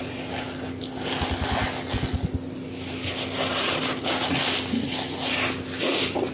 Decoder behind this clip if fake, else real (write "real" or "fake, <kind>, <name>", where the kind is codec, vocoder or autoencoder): real